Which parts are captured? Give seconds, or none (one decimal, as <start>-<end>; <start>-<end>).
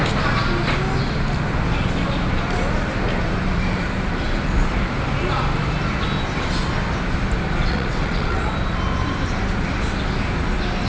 0.0-7.6; 8.5-10.9